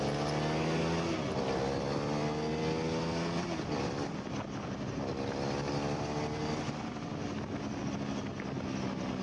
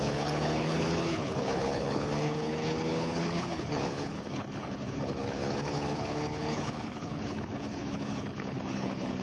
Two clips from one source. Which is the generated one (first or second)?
second